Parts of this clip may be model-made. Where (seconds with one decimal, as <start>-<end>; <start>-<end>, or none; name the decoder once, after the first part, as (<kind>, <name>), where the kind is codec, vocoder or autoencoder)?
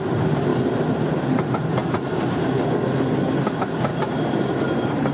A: 3.9-4.5 (vocoder, BigVGAN v2)